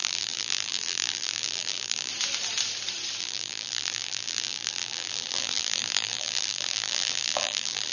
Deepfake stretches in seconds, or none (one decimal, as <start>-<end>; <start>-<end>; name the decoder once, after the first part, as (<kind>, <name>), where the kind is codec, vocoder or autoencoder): 0.0-2.1 (vocoder, BigVGAN v2); 3.2-7.9